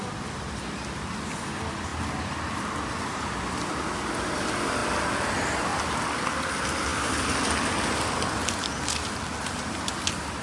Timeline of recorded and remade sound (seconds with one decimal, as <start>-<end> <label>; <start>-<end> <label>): 0.0-10.4 recorded